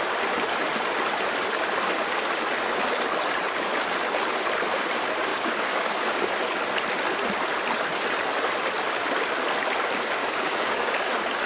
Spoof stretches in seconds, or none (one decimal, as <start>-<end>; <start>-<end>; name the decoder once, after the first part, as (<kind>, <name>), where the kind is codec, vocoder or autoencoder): 5.3-6.3 (codec, DAC); 10.2-11.1